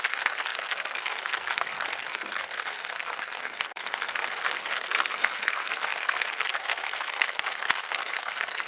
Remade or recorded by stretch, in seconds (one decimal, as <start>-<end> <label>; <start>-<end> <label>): 0.0-8.7 remade